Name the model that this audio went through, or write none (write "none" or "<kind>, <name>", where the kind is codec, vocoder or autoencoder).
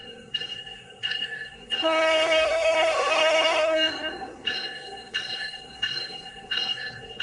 codec, SNAC